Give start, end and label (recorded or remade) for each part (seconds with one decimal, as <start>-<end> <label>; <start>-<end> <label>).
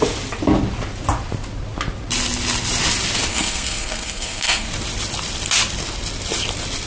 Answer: 0.0-3.3 recorded; 3.3-4.7 remade; 4.7-6.9 recorded